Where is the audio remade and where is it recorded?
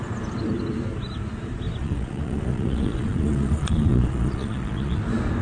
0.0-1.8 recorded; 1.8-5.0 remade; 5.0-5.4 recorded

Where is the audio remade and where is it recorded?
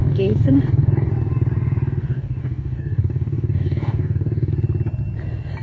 0.0-1.1 remade; 1.1-2.1 recorded; 2.1-4.5 remade; 4.5-5.6 recorded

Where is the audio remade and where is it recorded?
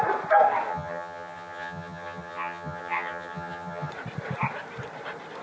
0.0-0.7 recorded; 0.7-3.9 remade; 3.9-5.4 recorded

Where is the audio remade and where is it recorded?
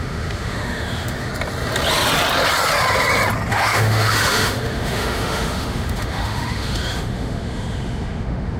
0.0-1.3 remade; 1.3-3.5 recorded; 3.5-8.6 remade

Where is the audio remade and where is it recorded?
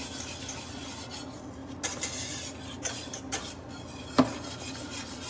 0.0-5.3 recorded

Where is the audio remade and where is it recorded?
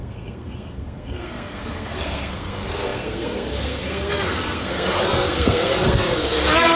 0.0-6.8 remade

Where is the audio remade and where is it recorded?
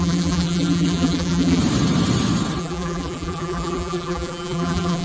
0.0-1.6 remade; 1.6-2.6 recorded; 2.6-5.0 remade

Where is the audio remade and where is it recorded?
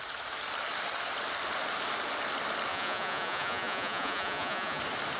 0.0-2.7 recorded; 2.7-4.8 remade; 4.8-5.2 recorded